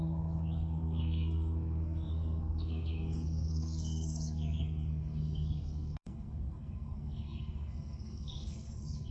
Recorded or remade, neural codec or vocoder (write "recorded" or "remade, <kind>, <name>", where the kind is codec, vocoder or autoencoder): remade, codec, SNAC